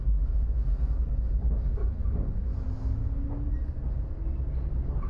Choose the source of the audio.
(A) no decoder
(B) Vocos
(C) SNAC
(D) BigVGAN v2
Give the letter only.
A